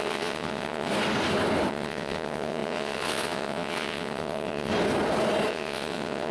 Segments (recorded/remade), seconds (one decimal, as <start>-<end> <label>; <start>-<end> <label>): 0.0-0.9 remade; 0.9-1.7 recorded; 1.7-4.7 remade; 4.7-5.5 recorded; 5.5-6.3 remade